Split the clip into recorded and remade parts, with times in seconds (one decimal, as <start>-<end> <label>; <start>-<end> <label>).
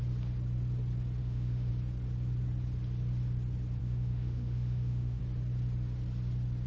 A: 0.0-1.2 recorded; 1.2-1.7 remade; 1.7-3.8 recorded; 3.8-5.2 remade; 5.2-6.7 recorded